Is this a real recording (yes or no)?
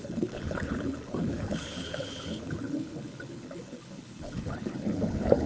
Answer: no